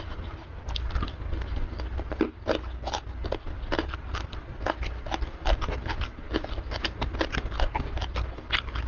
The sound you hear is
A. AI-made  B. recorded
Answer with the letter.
B